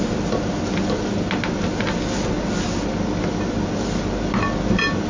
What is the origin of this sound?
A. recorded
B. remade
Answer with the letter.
A